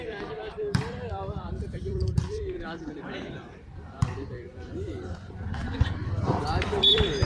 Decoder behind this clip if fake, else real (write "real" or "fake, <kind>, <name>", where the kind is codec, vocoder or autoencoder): fake, vocoder, BigVGAN v2